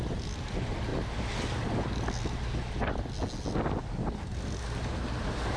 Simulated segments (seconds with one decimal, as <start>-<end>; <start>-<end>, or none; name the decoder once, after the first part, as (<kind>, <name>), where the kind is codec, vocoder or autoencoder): none